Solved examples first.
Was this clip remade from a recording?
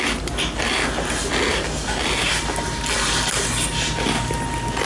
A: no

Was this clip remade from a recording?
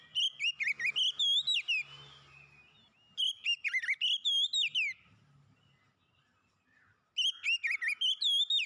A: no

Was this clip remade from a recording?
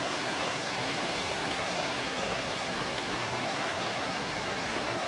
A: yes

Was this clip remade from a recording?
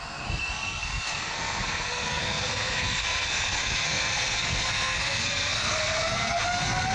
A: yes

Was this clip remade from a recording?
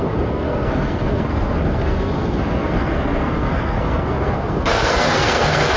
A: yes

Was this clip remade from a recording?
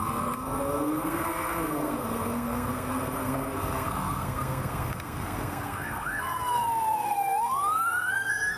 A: yes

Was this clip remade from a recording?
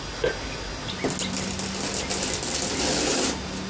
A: no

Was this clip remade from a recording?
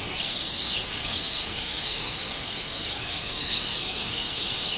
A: yes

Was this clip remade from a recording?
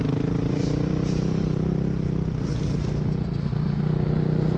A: no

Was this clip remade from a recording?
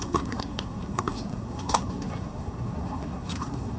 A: yes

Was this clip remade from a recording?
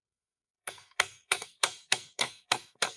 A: yes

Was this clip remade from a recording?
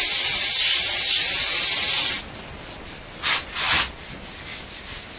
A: no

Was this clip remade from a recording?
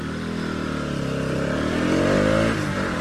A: no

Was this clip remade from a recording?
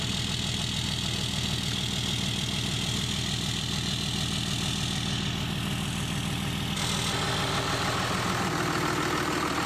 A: no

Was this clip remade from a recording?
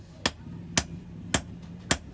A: no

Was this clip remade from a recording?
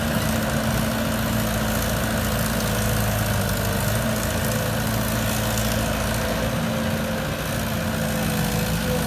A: no